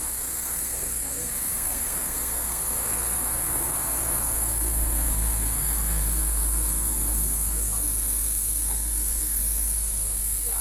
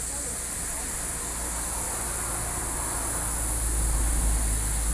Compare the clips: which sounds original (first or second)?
second